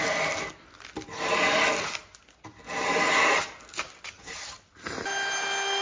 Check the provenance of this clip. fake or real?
real